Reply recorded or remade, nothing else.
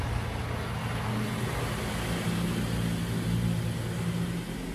recorded